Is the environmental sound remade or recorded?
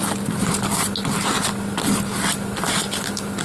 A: recorded